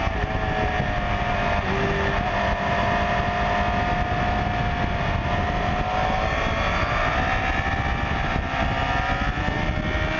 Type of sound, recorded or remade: recorded